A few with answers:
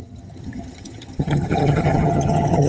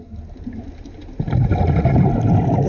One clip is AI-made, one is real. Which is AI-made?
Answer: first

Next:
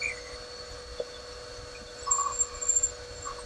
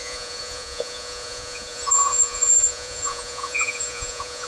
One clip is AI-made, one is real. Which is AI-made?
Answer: second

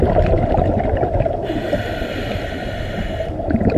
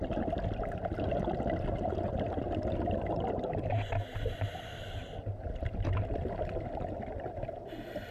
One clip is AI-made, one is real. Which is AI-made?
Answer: first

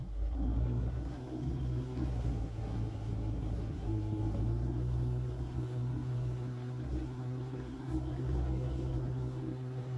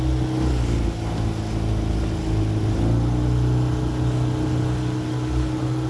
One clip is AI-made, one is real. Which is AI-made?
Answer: first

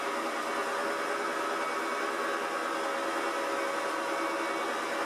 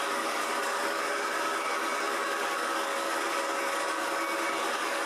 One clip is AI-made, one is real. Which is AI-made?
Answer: second